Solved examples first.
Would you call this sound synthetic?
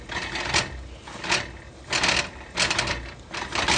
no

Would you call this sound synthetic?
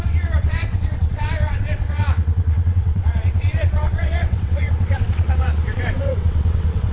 yes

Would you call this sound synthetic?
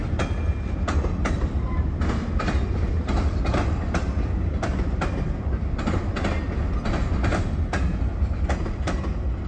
no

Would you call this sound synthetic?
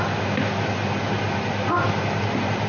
no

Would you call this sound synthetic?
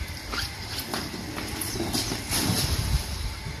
no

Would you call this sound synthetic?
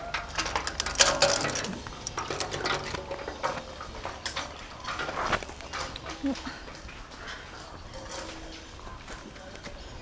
no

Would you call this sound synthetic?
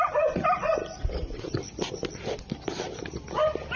no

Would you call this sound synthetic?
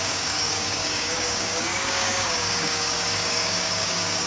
yes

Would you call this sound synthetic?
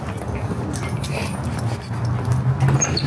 no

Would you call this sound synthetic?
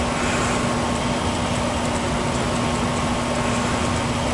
no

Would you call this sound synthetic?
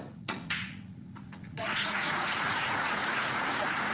yes